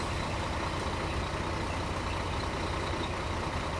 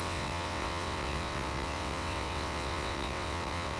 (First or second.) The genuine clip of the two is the first